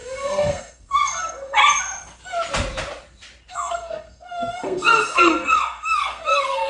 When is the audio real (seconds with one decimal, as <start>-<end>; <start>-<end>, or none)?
1.6-3.5

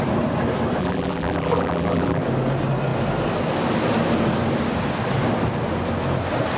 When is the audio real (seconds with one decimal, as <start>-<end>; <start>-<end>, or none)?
0.0-0.8; 2.2-6.6

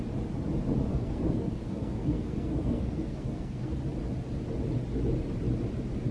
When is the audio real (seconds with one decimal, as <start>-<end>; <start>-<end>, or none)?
0.0-0.9; 3.7-6.1